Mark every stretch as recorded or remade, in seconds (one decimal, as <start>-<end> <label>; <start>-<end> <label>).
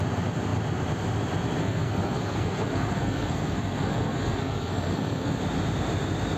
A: 0.0-1.6 recorded; 1.6-5.4 remade; 5.4-6.4 recorded